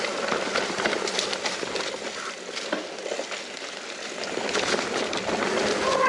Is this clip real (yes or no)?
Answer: yes